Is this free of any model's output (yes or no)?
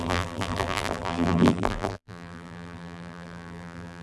no